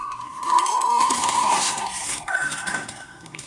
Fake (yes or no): yes